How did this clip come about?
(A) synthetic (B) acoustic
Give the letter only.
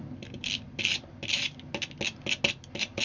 B